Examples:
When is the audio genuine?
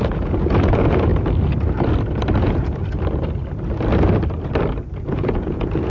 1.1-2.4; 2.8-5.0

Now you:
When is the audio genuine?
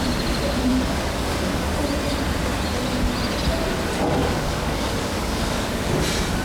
0.0-0.7; 1.6-4.2; 5.9-6.4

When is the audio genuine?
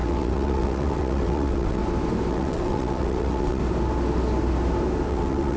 1.8-2.3; 3.6-5.1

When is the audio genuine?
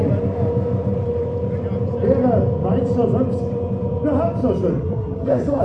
0.0-4.7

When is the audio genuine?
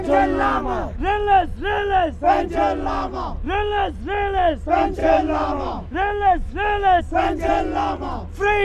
0.0-5.0; 7.0-8.6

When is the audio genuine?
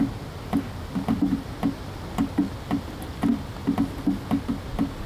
0.0-5.1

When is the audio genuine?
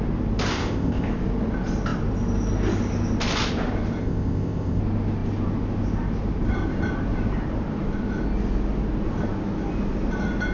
0.0-0.5; 1.1-4.0; 4.8-10.5